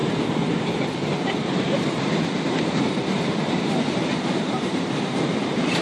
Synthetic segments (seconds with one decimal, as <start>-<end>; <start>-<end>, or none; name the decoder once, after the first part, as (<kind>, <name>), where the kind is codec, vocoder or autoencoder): 0.0-5.8 (vocoder, BigVGAN v2)